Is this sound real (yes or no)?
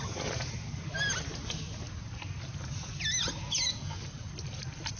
yes